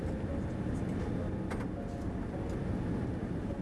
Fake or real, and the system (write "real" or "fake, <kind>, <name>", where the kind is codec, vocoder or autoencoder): real